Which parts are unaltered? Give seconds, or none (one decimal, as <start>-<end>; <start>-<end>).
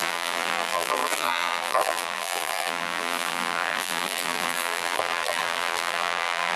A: none